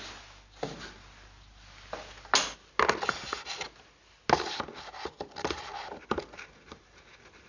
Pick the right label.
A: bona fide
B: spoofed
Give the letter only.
A